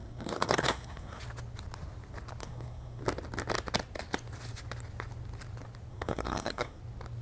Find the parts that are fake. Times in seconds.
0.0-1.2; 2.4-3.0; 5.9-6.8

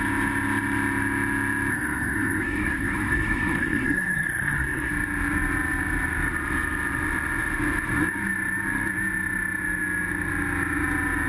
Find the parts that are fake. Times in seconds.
1.7-4.9

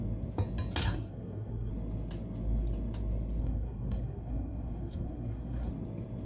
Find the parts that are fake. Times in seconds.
0.8-1.7; 3.4-5.7

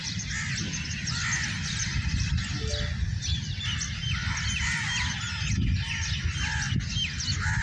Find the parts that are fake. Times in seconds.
none

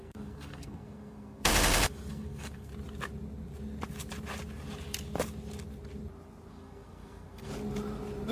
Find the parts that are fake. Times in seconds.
0.0-1.5; 2.1-2.7; 6.5-7.5

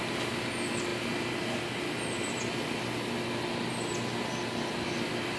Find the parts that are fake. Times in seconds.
none

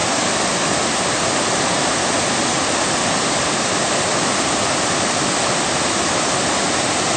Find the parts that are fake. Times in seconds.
none

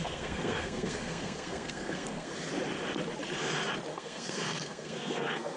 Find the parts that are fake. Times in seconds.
0.0-2.3; 3.9-5.6